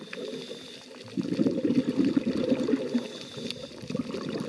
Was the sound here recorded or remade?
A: recorded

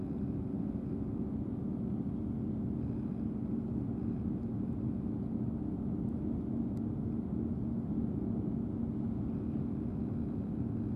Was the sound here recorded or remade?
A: recorded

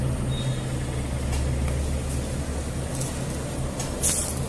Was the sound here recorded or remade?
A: recorded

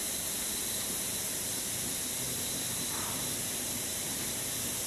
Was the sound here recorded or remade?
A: remade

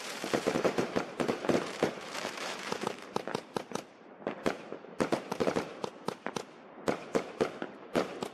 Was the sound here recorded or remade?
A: remade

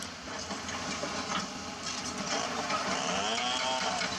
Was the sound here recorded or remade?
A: recorded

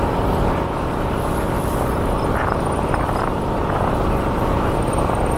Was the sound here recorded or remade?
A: remade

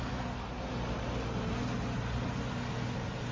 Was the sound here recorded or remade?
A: recorded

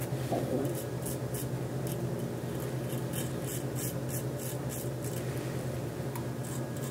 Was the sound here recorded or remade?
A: recorded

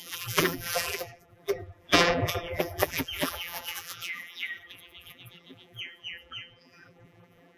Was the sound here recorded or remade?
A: remade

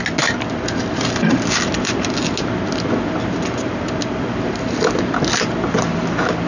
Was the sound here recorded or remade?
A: recorded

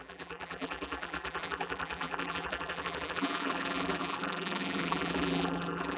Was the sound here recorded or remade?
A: remade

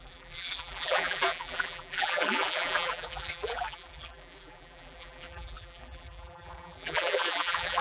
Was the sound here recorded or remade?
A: remade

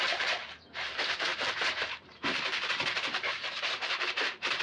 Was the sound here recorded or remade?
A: remade